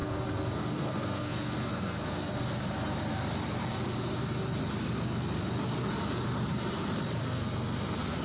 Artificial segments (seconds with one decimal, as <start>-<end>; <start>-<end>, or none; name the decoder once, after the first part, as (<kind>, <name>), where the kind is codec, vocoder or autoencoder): 0.0-2.4 (codec, SNAC); 7.2-8.2